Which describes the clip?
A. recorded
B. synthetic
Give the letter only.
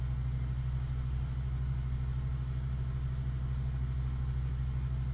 A